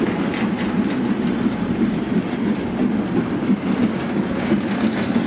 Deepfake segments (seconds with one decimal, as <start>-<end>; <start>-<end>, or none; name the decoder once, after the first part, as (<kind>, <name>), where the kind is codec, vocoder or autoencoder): 3.8-4.7 (codec, DAC)